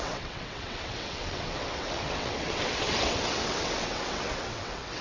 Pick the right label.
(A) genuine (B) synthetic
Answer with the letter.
B